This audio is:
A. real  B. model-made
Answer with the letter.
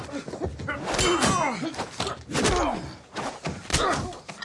A